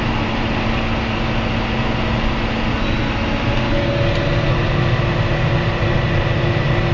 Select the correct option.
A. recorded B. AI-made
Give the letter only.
A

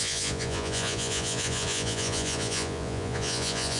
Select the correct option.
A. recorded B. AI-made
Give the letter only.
B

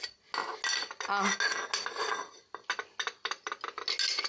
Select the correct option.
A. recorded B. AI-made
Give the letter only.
A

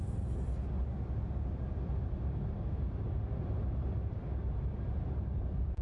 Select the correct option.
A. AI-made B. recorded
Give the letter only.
B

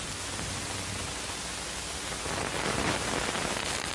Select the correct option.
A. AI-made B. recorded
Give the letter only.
B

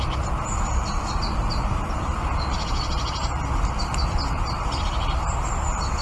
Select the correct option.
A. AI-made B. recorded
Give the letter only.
B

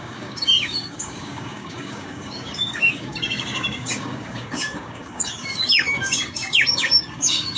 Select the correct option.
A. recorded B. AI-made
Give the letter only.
B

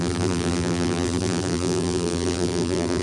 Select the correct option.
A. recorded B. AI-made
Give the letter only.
B